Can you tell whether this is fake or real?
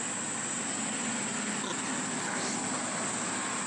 real